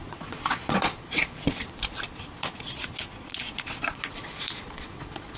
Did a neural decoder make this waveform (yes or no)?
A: yes